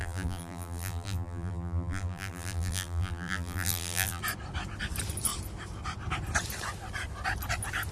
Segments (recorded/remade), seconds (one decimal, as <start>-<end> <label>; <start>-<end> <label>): 0.0-4.2 remade; 4.2-7.9 recorded